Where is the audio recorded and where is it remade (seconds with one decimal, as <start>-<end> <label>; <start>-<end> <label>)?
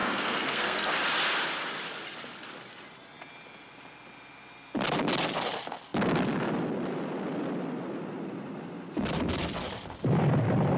0.0-0.9 remade; 0.9-10.8 recorded